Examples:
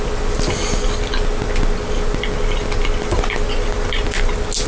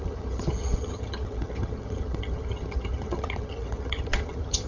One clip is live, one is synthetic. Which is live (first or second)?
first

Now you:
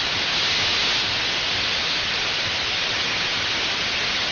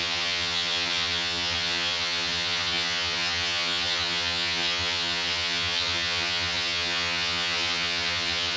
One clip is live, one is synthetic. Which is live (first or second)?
first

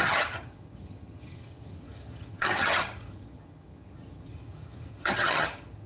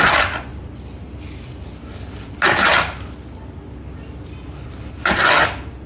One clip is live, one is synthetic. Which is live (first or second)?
second